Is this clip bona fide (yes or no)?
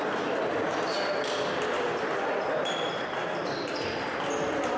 yes